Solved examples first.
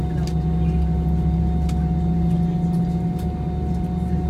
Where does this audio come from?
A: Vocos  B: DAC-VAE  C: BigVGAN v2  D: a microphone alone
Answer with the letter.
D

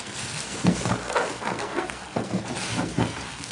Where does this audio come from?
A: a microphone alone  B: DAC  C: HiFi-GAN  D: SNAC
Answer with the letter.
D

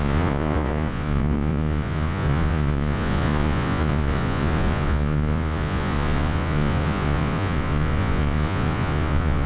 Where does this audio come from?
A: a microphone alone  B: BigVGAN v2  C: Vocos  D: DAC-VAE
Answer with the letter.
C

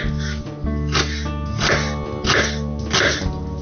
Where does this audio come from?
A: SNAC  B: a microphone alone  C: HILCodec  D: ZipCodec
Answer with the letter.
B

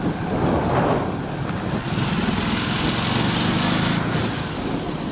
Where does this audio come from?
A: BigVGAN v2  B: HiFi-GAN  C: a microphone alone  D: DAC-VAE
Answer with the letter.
C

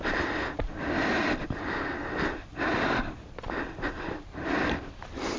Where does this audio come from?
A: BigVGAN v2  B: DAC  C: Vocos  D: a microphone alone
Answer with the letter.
D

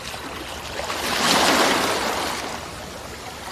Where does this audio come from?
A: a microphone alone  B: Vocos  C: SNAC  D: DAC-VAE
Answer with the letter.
A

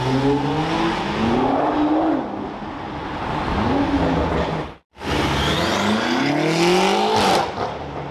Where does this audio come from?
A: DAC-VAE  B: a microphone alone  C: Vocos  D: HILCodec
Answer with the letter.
B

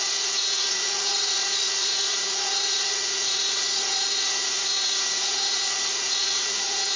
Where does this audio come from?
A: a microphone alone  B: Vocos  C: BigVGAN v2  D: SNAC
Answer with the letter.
B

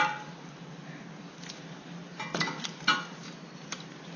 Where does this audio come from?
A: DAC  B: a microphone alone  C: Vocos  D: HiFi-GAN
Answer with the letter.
B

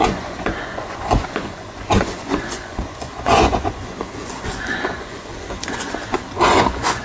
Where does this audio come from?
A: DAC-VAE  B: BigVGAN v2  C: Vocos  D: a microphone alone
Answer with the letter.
C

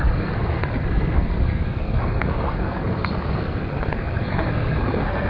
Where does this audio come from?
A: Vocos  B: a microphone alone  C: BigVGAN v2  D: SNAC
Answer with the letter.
D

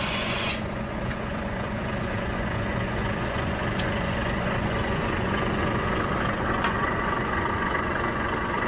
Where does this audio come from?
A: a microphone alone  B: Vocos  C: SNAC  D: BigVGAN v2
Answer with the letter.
B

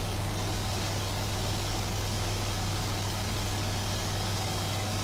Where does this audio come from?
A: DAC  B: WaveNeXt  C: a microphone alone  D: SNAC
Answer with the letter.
A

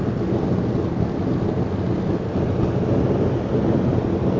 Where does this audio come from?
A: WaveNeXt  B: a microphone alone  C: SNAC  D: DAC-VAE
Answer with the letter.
B